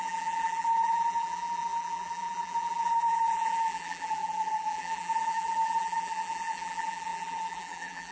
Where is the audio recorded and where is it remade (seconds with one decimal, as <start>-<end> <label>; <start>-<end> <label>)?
0.0-8.1 remade